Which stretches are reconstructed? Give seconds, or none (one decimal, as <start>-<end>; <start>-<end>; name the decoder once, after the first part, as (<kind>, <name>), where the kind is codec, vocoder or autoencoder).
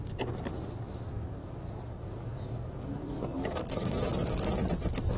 1.4-4.2 (codec, DAC)